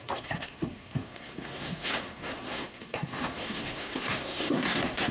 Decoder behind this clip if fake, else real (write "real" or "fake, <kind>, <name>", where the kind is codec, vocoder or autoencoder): fake, codec, SNAC